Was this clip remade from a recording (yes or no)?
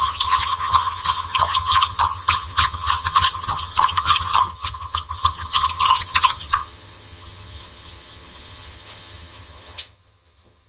yes